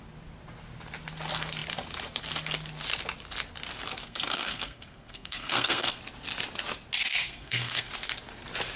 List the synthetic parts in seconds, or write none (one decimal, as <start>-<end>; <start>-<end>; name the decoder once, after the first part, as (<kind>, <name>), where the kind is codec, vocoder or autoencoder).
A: 4.0-6.0 (codec, SNAC); 7.0-7.9